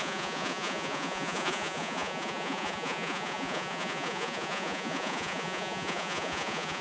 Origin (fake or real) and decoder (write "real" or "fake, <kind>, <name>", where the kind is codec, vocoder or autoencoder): fake, vocoder, Vocos